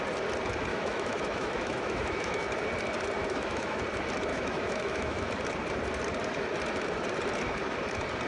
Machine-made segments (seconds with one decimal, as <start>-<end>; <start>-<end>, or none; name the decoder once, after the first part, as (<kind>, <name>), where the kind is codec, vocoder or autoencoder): 0.7-2.5 (autoencoder, DAC-VAE); 3.2-3.8; 4.3-5.3